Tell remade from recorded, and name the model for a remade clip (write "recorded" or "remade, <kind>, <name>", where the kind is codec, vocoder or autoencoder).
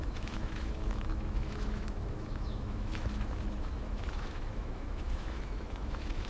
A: remade, autoencoder, DAC-VAE